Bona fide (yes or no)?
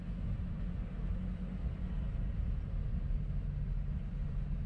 yes